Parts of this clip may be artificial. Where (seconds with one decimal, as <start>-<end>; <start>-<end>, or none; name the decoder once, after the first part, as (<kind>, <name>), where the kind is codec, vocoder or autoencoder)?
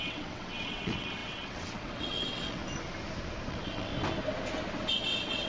0.0-2.6 (vocoder, WaveNeXt); 3.5-3.9; 4.9-5.5